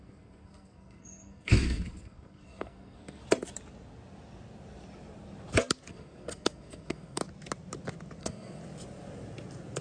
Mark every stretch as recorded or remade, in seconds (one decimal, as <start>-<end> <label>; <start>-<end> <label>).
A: 0.0-3.2 remade; 3.2-5.9 recorded; 5.9-7.2 remade; 7.2-8.2 recorded; 8.2-8.6 remade; 8.6-9.8 recorded